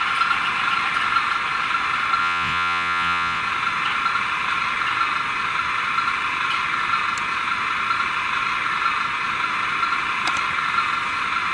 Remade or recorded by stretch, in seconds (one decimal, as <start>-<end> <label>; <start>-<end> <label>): 0.0-2.2 recorded; 2.2-3.4 remade; 3.4-11.5 recorded